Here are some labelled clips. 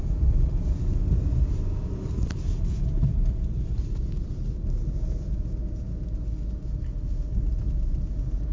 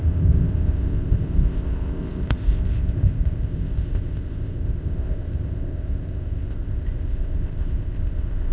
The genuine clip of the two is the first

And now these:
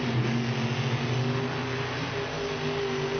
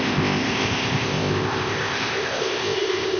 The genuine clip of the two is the first